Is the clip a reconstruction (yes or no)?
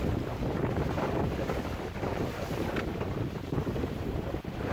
yes